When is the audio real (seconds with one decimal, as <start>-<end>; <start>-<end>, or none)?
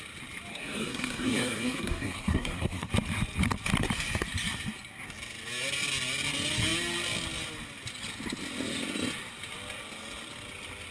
0.0-0.5; 2.9-10.9